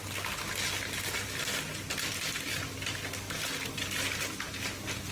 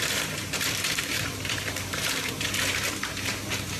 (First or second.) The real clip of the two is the first